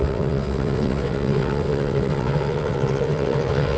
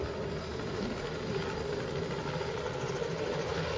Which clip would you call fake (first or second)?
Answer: first